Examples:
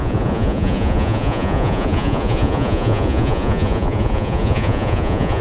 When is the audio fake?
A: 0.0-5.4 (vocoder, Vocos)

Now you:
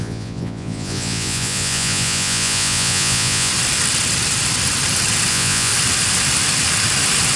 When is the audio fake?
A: 0.0-3.5 (vocoder, Vocos); 5.3-5.7

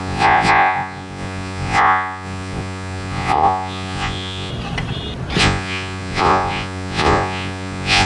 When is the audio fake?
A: 0.0-4.5 (vocoder, Vocos); 5.4-8.1

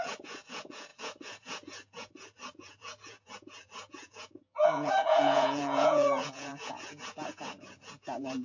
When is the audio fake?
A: 0.0-8.4 (vocoder, Vocos)

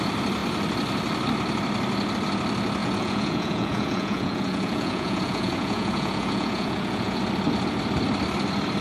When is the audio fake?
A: 2.8-7.2 (vocoder, Vocos)

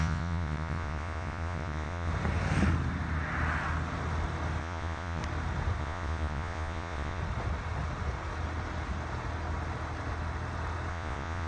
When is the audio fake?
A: 0.0-2.1 (vocoder, Vocos); 4.6-5.2; 5.8-7.2; 10.9-11.5